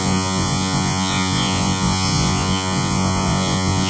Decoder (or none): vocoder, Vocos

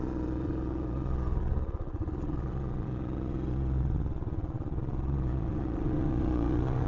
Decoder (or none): vocoder, Vocos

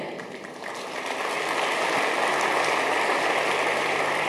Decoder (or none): none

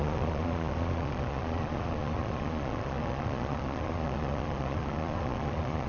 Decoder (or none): vocoder, Vocos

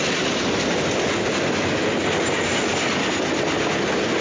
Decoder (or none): none